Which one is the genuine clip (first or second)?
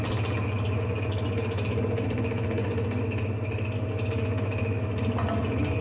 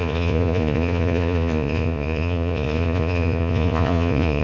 first